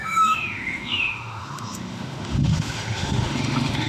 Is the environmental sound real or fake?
fake